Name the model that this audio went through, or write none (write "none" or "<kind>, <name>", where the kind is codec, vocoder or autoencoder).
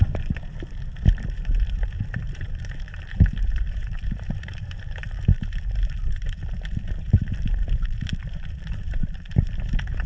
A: vocoder, BigVGAN v2